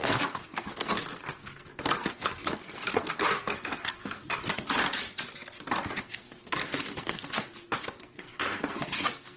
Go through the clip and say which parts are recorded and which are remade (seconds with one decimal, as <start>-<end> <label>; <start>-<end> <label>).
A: 0.0-4.2 remade; 4.2-6.0 recorded; 6.0-7.5 remade; 7.5-8.0 recorded; 8.0-9.4 remade